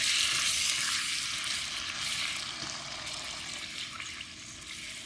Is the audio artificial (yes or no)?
no